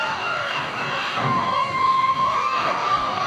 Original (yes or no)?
no